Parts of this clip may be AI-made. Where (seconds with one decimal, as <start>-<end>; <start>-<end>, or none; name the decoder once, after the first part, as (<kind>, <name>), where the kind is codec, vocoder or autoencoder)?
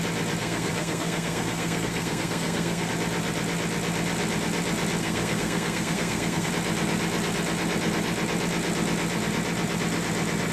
0.4-2.9 (codec, SNAC); 5.0-6.5